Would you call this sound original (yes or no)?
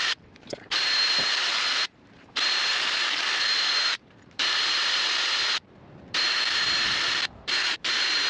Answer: no